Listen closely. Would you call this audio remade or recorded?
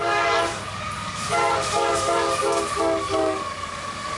remade